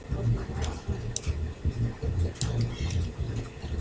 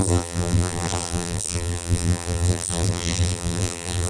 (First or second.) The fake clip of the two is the second